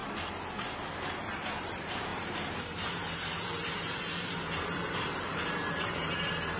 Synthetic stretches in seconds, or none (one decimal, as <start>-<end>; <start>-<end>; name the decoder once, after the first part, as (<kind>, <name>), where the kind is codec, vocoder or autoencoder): 1.1-6.6 (vocoder, BigVGAN v2)